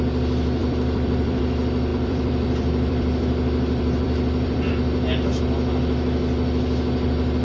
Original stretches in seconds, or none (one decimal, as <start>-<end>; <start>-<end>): 0.0-0.6; 1.4-1.9; 4.7-7.4